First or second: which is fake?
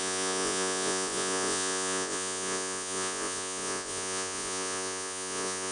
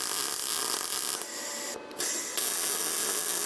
first